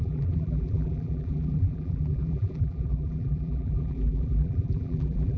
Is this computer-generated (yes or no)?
yes